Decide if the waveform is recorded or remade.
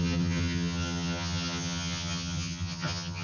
remade